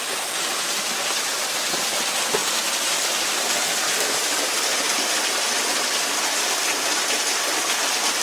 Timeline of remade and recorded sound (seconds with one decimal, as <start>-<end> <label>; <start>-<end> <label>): 0.0-8.2 recorded